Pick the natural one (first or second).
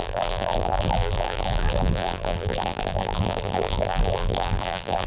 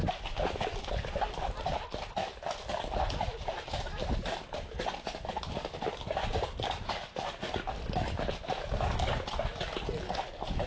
second